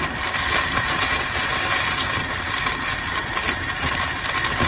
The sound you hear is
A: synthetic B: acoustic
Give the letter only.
B